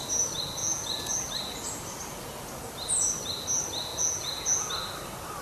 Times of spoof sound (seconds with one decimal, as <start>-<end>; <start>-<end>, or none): 0.6-1.1; 3.9-4.7